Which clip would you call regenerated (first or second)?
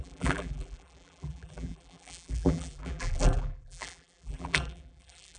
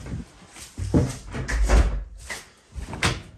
first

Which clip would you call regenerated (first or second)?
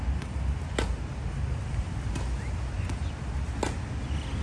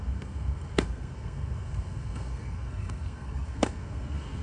second